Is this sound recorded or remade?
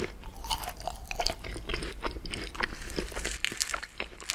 recorded